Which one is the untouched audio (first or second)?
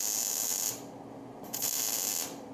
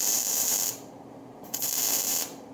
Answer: first